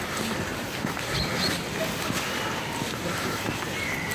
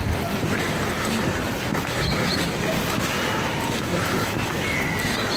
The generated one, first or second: first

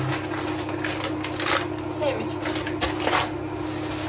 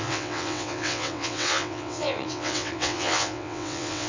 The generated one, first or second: second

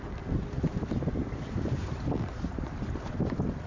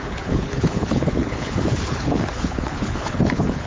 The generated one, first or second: second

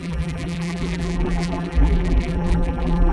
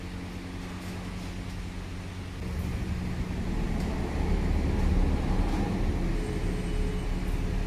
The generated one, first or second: first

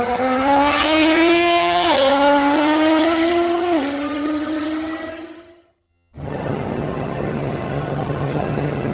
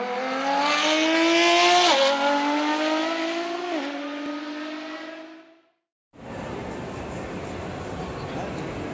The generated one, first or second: first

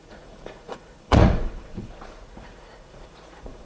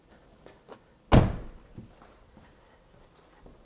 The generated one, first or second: first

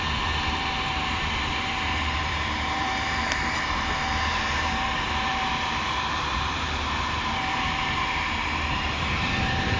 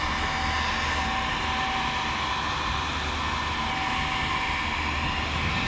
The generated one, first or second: first